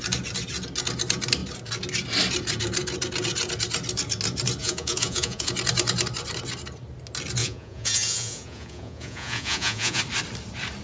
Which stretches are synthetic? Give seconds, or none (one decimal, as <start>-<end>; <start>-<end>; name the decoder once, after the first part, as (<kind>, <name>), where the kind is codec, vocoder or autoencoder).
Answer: 4.6-5.5 (vocoder, Vocos); 7.4-10.0